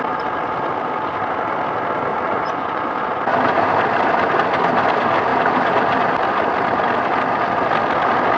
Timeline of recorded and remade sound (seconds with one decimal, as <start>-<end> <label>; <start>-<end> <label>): 0.0-2.1 recorded; 2.1-2.8 remade; 2.8-8.4 recorded